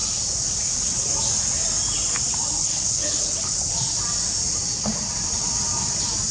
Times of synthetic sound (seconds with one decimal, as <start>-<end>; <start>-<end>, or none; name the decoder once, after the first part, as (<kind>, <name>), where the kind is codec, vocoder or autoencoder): 2.6-3.7 (codec, HILCodec)